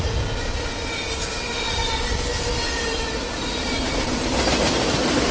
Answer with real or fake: real